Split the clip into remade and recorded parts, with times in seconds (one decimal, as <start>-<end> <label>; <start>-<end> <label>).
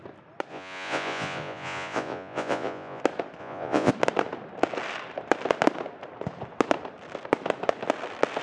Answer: 0.0-0.5 recorded; 0.5-3.0 remade; 3.0-3.4 recorded; 3.4-3.9 remade; 3.9-8.4 recorded